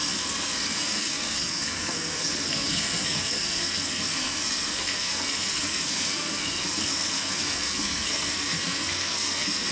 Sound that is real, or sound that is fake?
fake